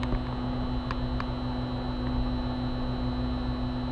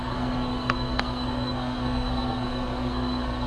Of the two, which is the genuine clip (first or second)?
first